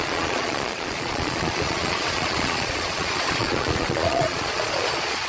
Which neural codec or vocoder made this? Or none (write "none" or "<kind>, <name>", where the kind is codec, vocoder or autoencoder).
vocoder, Vocos